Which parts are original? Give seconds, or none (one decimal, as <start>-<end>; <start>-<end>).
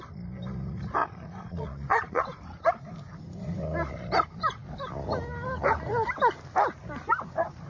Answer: 0.0-1.0; 2.7-7.7